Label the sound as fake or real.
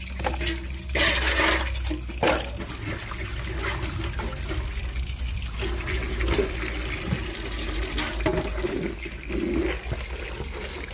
real